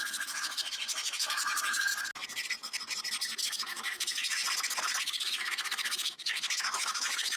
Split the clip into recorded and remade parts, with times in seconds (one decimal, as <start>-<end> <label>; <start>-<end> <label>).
0.0-1.9 remade; 1.9-3.4 recorded; 3.4-4.4 remade; 4.4-5.0 recorded; 5.0-7.4 remade